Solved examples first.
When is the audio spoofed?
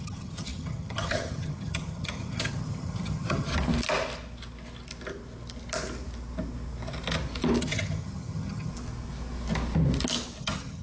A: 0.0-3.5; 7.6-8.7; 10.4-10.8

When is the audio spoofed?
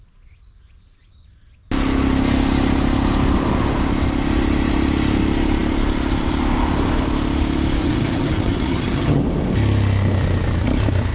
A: 7.8-9.2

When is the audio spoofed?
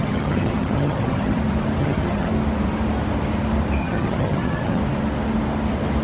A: 0.0-1.4; 1.8-2.3; 3.8-4.8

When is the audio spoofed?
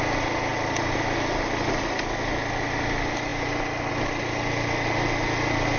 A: none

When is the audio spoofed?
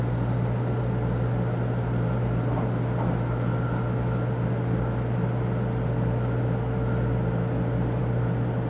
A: none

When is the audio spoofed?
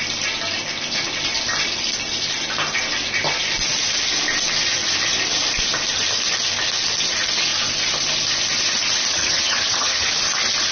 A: 9.1-10.1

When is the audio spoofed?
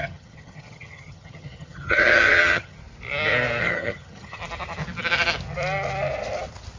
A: 0.0-2.8; 3.6-4.4